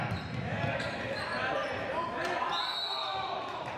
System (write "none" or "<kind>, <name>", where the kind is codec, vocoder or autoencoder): none